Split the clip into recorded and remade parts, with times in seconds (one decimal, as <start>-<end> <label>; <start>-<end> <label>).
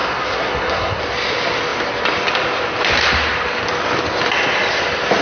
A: 0.0-1.0 remade; 1.0-5.2 recorded